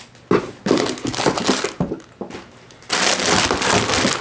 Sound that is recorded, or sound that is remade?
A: recorded